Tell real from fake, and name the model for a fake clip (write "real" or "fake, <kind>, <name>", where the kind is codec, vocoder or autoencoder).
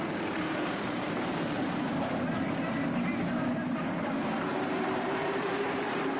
fake, vocoder, BigVGAN v2